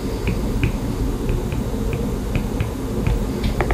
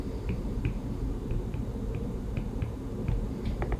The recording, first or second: first